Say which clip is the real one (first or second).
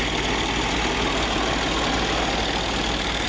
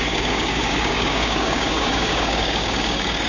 first